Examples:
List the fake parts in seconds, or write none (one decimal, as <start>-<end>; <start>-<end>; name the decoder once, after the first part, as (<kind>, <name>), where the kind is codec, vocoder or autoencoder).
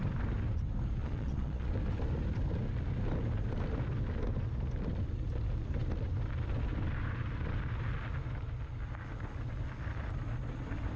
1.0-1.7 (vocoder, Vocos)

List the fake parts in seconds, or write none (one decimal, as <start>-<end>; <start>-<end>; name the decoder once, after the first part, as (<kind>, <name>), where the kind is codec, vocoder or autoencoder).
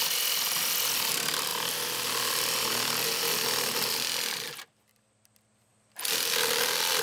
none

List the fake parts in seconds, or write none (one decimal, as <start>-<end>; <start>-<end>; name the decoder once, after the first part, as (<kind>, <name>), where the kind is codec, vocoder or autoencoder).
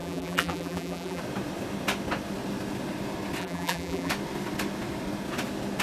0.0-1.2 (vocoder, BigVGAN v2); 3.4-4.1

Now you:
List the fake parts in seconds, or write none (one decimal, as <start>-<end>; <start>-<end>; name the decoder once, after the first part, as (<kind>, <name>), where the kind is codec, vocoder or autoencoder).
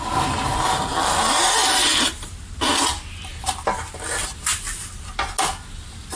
none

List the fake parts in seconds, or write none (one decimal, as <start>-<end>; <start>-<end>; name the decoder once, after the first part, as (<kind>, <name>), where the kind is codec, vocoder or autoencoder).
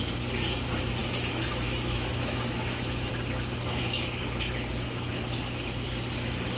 1.0-3.1 (autoencoder, DAC-VAE)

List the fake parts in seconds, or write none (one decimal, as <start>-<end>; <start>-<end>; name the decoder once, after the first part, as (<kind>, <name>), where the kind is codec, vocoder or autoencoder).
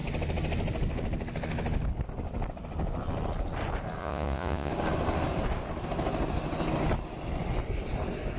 4.0-4.7 (vocoder, Vocos)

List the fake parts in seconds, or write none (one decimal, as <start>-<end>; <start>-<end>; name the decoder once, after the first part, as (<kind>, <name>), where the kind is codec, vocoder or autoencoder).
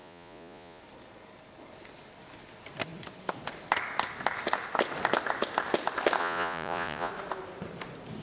0.0-0.8 (vocoder, Vocos); 6.2-7.1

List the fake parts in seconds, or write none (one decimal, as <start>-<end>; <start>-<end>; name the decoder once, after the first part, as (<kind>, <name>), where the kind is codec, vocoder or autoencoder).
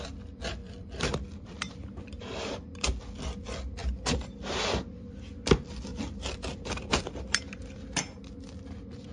0.6-1.7 (vocoder, BigVGAN v2); 3.8-5.3; 5.9-7.0